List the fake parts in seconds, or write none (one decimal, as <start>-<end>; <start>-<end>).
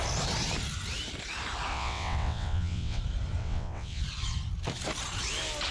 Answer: 1.7-3.0; 3.4-4.0